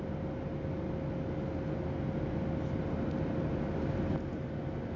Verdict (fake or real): real